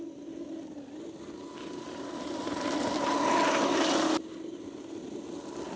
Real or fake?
real